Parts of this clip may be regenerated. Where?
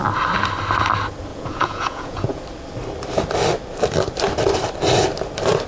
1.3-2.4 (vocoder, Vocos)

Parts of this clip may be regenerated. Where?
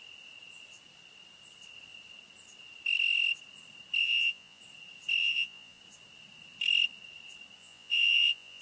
4.0-4.6 (vocoder, Vocos); 5.2-5.8; 7.6-8.6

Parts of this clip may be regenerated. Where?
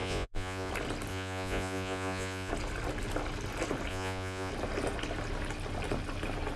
0.0-0.7 (vocoder, Vocos); 1.1-2.5; 3.9-4.5